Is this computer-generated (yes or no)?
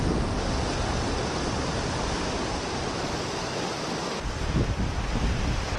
no